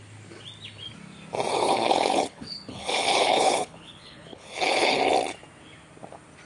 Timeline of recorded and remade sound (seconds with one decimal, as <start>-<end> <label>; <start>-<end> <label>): 0.0-1.5 recorded; 1.5-5.0 remade; 5.0-6.5 recorded